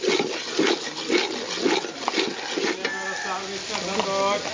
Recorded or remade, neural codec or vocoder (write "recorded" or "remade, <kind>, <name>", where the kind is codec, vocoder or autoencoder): recorded